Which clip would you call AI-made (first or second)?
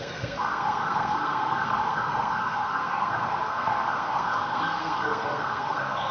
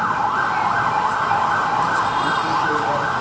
first